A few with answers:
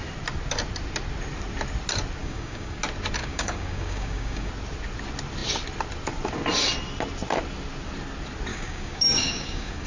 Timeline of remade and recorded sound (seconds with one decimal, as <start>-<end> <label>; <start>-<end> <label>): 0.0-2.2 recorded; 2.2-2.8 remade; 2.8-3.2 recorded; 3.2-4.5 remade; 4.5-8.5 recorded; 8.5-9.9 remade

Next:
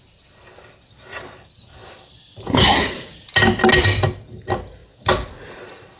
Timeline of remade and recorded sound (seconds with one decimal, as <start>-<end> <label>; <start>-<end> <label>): 0.0-6.0 recorded

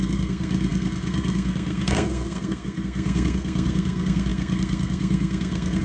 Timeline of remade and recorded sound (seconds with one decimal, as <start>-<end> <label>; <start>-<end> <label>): 0.0-5.8 remade

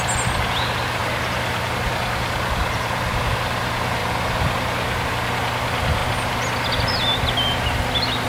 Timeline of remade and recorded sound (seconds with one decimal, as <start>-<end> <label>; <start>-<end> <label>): 0.0-8.3 recorded